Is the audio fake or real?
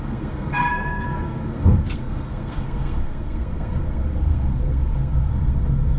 fake